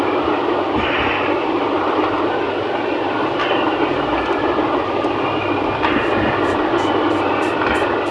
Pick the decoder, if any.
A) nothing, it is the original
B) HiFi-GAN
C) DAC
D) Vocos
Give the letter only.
A